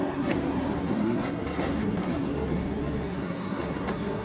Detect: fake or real fake